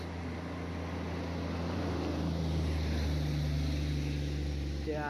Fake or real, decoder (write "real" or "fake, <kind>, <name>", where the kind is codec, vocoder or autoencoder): real